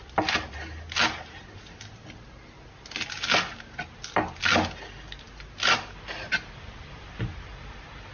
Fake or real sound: real